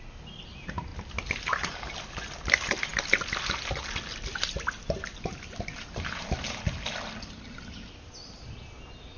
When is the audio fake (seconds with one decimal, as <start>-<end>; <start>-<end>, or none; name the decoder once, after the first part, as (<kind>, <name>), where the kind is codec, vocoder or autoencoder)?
none